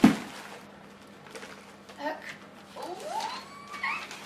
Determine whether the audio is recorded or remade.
recorded